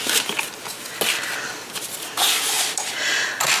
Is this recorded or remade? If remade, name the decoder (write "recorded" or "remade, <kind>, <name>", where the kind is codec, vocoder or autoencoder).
recorded